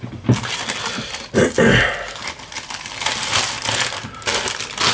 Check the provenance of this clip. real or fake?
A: real